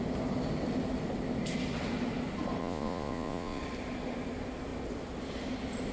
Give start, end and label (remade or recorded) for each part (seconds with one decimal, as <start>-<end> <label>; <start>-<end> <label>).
0.0-2.6 recorded; 2.6-3.6 remade; 3.6-5.9 recorded